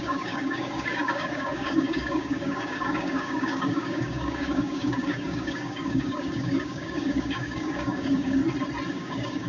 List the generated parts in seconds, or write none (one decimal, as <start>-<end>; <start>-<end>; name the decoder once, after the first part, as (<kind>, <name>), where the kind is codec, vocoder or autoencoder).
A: 0.0-8.4 (codec, DAC); 8.9-9.5